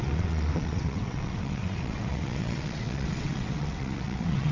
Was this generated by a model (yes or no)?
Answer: yes